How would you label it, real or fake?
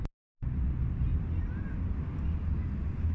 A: real